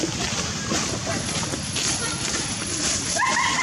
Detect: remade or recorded recorded